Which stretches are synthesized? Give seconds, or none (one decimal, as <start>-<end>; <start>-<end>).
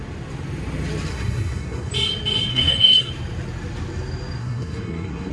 1.1-1.9; 2.5-3.1; 4.4-5.3